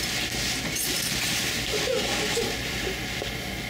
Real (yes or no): yes